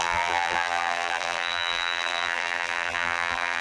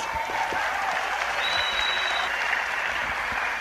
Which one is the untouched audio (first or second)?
second